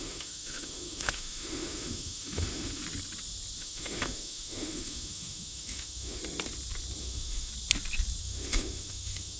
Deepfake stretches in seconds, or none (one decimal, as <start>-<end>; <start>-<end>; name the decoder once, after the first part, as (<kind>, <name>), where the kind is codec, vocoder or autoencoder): 0.0-2.8 (autoencoder, DAC-VAE); 3.6-6.2; 7.0-7.5; 8.2-9.4